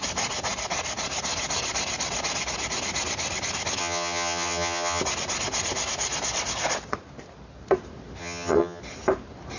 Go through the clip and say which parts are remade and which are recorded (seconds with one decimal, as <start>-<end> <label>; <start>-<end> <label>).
0.0-3.8 recorded; 3.8-5.0 remade; 5.0-8.2 recorded; 8.2-8.8 remade; 8.8-9.6 recorded